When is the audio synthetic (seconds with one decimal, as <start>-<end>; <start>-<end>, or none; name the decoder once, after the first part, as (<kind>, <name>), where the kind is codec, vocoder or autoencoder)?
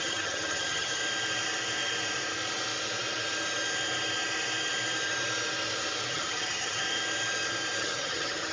0.0-1.0 (vocoder, HiFi-GAN); 6.1-6.8; 7.8-8.5